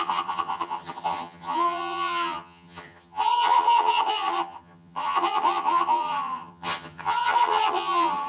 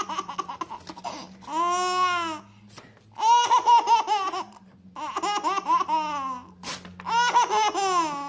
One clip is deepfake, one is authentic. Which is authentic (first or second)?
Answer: second